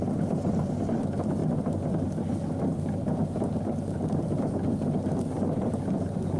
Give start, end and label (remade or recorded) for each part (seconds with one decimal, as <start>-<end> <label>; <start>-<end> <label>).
0.0-6.4 remade